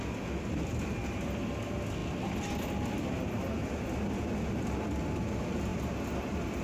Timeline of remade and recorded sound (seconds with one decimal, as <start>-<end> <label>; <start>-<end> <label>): 0.0-6.6 recorded